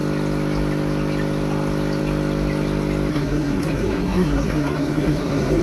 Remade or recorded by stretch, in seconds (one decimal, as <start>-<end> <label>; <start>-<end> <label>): 0.0-3.1 recorded; 3.1-5.6 remade